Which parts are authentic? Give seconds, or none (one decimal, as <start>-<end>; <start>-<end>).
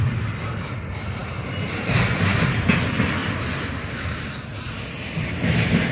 0.0-5.9